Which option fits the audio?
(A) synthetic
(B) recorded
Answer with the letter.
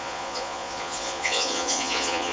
A